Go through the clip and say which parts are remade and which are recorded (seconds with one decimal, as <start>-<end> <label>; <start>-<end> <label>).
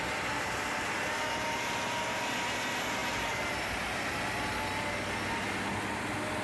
0.0-6.4 recorded